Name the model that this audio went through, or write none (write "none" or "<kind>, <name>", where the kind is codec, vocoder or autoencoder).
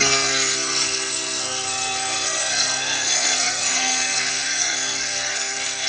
codec, SNAC